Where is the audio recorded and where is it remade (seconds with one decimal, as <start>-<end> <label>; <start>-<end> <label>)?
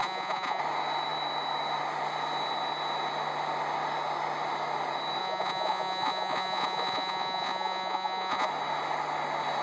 0.0-0.6 remade; 0.6-5.2 recorded; 5.2-8.5 remade; 8.5-9.6 recorded